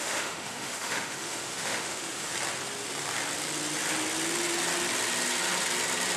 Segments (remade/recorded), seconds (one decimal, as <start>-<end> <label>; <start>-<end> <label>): 0.0-2.3 remade; 2.3-6.2 recorded